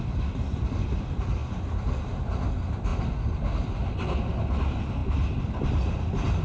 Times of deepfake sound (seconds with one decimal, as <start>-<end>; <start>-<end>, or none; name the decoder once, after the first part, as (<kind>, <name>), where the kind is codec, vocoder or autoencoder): 1.4-1.9 (vocoder, BigVGAN v2); 2.9-4.4; 5.0-5.9

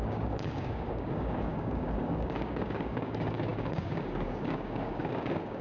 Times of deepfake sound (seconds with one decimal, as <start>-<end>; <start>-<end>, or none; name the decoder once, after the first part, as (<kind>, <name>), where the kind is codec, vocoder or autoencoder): 0.0-5.6 (codec, DAC)

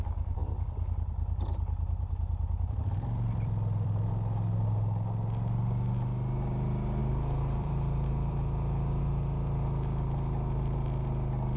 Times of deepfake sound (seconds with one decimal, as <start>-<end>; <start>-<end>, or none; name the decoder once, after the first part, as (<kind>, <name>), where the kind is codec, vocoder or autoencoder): 0.4-4.1 (vocoder, BigVGAN v2); 7.0-9.0

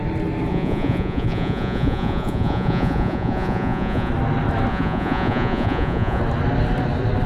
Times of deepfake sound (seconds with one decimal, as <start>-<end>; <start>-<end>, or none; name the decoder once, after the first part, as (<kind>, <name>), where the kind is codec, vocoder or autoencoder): 0.5-4.1 (vocoder, Vocos); 4.7-6.2

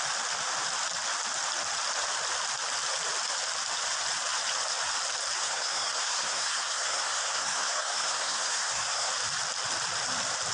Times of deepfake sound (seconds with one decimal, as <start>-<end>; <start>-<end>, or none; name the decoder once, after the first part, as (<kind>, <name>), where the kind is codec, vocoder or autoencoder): 5.4-9.1 (codec, SNAC)